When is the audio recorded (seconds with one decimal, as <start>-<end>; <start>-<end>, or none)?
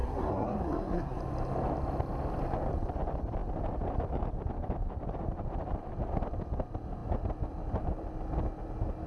1.2-9.1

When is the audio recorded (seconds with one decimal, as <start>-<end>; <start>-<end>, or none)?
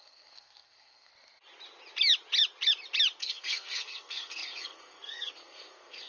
1.1-3.2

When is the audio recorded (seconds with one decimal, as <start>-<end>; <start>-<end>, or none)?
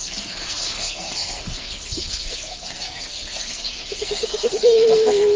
none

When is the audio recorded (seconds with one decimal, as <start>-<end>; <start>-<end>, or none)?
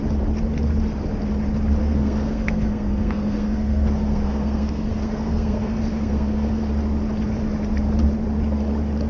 0.0-1.8; 6.6-9.1